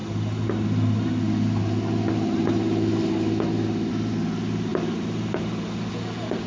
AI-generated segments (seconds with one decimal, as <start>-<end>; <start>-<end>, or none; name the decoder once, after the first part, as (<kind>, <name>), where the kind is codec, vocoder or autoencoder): none